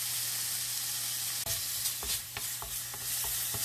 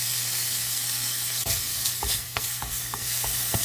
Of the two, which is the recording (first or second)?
first